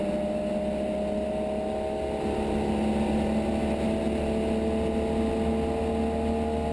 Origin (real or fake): real